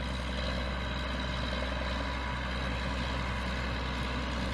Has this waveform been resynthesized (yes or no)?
no